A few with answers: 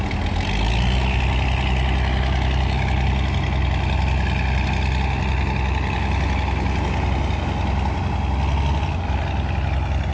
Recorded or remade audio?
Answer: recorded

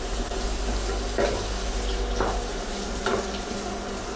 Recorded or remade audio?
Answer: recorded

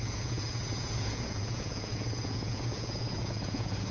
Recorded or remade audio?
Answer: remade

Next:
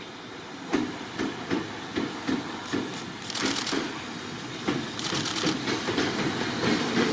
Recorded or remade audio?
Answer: recorded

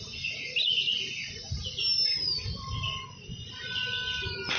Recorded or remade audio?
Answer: recorded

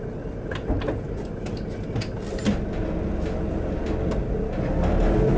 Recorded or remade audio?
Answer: recorded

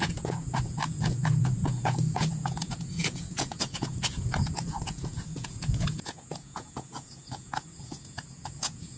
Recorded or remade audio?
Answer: remade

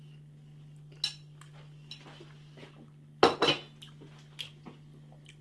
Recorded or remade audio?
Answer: recorded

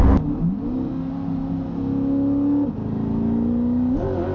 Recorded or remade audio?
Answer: recorded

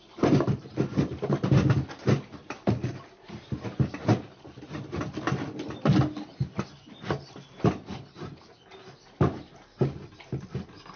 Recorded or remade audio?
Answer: recorded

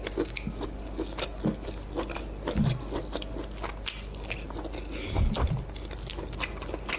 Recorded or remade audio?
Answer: recorded